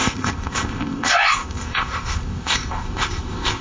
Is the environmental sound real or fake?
fake